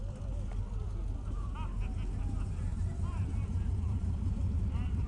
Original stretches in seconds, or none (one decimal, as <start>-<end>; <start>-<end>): 0.0-2.7